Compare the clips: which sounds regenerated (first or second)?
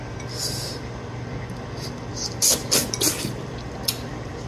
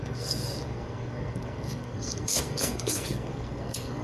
second